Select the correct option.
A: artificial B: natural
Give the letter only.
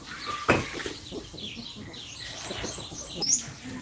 B